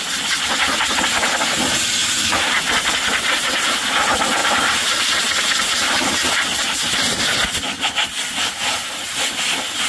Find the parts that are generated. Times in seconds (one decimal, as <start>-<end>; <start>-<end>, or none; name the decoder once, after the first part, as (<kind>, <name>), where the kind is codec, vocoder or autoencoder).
2.0-2.6 (vocoder, BigVGAN v2); 4.4-7.1